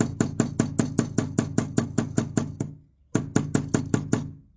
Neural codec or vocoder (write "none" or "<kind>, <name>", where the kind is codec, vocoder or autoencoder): none